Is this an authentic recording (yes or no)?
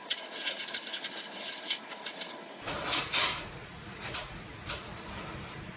no